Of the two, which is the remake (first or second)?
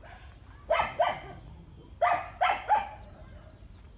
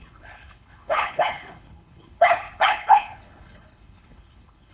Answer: second